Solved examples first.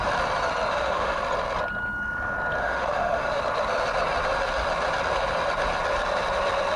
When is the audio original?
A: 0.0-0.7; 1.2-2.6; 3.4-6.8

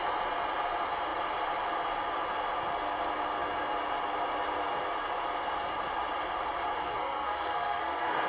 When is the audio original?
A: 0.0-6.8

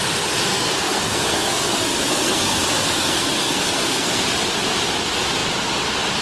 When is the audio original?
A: 0.0-0.5; 4.2-6.2